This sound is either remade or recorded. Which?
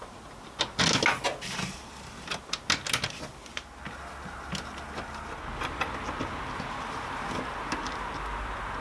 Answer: recorded